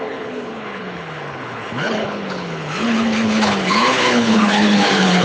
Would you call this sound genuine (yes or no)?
no